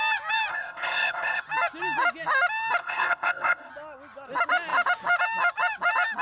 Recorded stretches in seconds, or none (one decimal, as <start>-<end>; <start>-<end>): 0.0-0.5; 1.4-2.8; 3.7-6.2

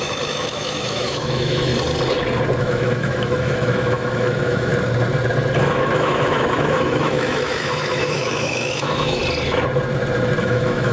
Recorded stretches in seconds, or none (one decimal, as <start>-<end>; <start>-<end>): 1.7-2.6; 4.7-5.6; 9.2-10.4

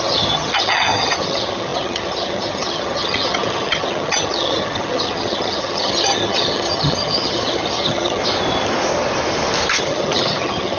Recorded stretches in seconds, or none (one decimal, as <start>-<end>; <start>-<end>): 8.2-9.7

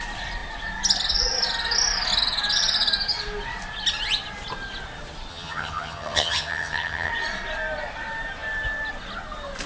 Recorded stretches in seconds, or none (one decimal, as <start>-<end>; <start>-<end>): 0.0-5.3; 7.1-9.7

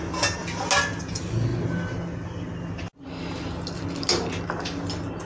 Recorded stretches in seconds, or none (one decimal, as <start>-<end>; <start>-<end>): 0.0-5.2

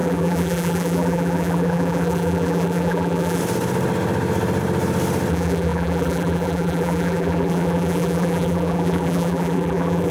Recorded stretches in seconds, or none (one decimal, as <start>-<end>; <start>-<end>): 3.4-5.3